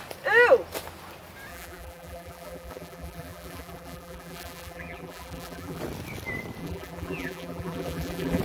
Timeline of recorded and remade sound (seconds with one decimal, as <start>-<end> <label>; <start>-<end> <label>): 0.0-1.5 recorded; 1.5-5.8 remade; 5.8-6.6 recorded; 6.6-8.4 remade